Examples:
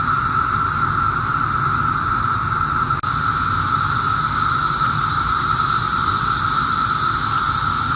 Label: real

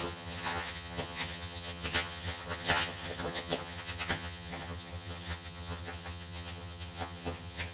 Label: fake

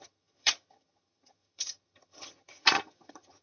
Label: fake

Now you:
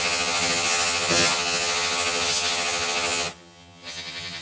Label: fake